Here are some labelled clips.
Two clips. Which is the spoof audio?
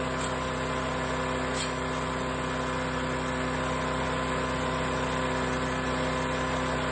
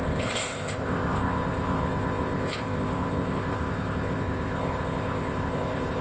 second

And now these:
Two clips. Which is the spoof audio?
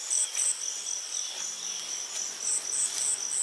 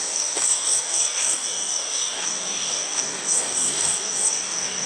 second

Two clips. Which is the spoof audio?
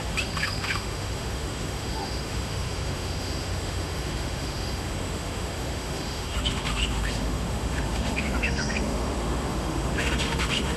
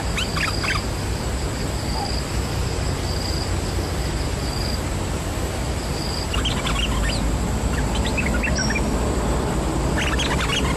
first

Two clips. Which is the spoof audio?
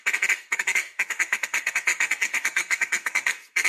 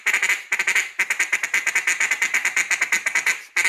first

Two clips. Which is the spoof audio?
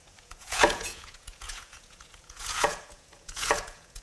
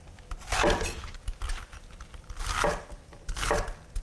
first